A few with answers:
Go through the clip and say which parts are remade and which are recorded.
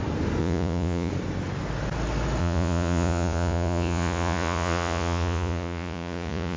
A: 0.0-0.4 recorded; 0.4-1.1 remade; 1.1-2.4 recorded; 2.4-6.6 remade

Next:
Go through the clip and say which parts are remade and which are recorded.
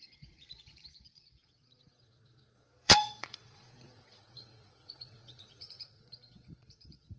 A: 0.0-7.2 remade